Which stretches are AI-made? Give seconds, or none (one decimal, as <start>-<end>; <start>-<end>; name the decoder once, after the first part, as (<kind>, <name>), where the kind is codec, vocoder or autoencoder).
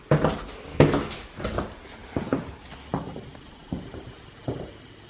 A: 0.7-1.4 (autoencoder, DAC-VAE)